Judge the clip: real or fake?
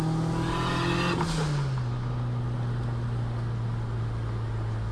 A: real